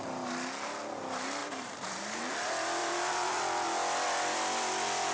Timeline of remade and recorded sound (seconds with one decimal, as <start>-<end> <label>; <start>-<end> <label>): 0.0-1.4 recorded; 1.4-2.3 remade; 2.3-2.8 recorded; 2.8-3.4 remade; 3.4-5.1 recorded